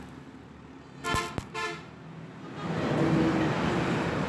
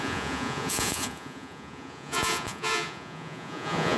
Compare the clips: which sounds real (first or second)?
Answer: first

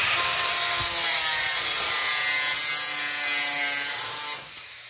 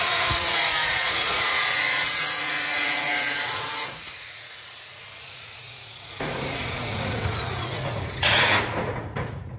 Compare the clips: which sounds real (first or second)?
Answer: first